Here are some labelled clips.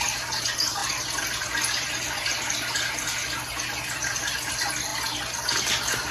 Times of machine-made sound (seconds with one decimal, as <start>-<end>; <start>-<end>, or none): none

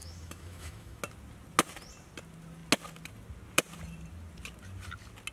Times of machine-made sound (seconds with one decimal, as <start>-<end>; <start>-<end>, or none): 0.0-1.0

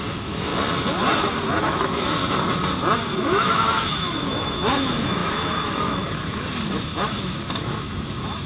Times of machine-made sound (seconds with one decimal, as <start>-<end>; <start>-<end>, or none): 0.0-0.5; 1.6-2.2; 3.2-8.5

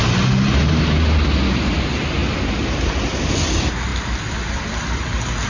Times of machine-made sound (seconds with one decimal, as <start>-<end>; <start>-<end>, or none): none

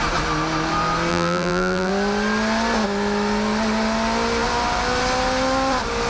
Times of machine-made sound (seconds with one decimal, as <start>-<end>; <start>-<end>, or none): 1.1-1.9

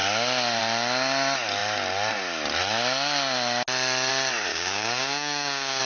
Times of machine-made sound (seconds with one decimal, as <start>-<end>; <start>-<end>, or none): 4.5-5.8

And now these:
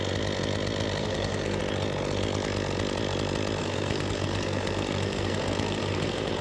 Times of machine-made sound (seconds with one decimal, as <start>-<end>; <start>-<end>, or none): 1.0-1.6; 3.6-6.4

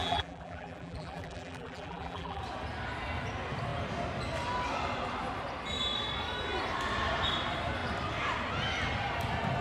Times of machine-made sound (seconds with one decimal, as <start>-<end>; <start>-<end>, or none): 0.0-2.4